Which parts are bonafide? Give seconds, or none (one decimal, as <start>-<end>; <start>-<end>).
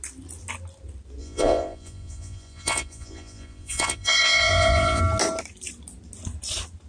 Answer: 0.0-1.2; 5.0-6.9